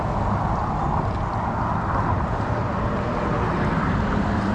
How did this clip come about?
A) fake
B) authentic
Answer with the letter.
B